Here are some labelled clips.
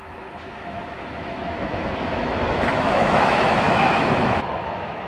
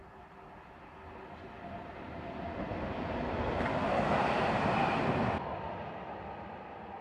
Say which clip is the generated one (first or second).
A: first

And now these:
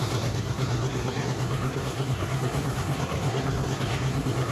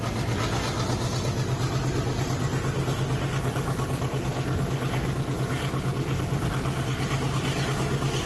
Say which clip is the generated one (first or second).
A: first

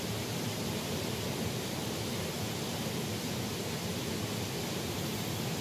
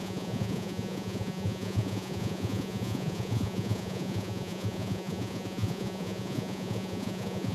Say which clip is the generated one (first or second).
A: second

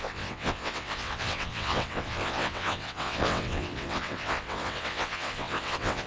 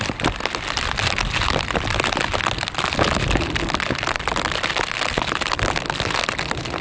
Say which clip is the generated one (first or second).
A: first